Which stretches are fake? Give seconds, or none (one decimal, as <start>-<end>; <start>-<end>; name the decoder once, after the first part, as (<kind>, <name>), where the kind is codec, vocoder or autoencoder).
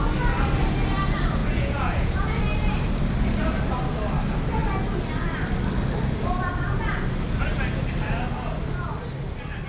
1.4-2.4 (vocoder, Vocos)